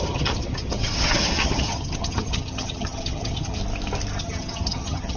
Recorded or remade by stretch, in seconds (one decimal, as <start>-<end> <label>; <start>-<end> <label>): 0.0-3.6 remade; 3.6-4.2 recorded; 4.2-5.2 remade